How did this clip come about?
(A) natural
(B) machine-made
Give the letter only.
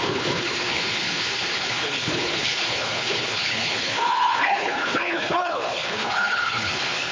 B